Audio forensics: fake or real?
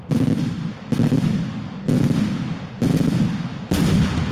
real